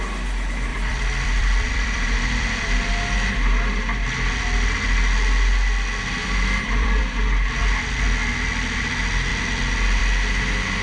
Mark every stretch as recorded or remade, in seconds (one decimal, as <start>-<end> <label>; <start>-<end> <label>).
0.0-0.7 recorded; 0.7-2.9 remade; 2.9-6.2 recorded; 6.2-7.0 remade; 7.0-10.8 recorded